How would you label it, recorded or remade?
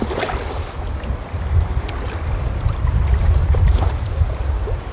recorded